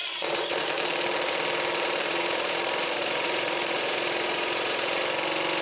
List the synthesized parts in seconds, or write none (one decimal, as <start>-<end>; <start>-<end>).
0.0-0.6; 2.1-5.0